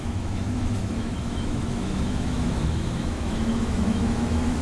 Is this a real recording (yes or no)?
no